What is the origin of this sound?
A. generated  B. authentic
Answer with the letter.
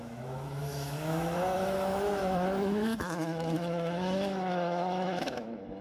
A